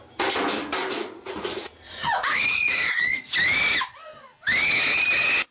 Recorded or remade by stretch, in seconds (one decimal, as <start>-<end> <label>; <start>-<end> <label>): 0.0-0.8 recorded; 0.8-3.2 remade; 3.2-5.5 recorded